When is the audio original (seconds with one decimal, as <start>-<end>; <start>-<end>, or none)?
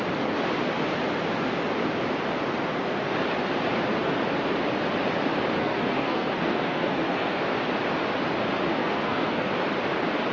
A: 0.0-5.6; 7.4-8.8; 9.5-10.3